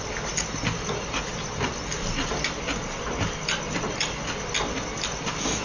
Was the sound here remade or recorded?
recorded